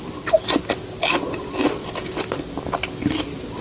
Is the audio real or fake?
real